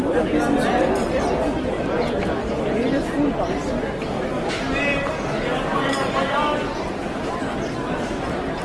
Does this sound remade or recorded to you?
recorded